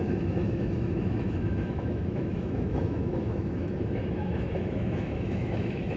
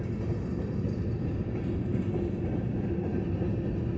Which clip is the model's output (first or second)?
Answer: first